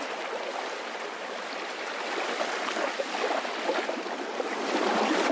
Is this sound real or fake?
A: real